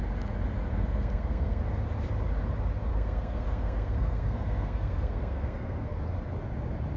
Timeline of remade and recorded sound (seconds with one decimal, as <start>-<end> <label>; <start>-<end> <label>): 0.0-0.7 recorded; 0.7-1.6 remade; 1.6-2.9 recorded; 2.9-6.0 remade; 6.0-7.0 recorded